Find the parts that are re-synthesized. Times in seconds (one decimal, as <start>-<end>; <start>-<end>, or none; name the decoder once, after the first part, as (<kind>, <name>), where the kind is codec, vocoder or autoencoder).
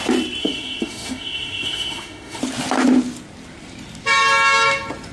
0.4-2.4 (autoencoder, DAC-VAE)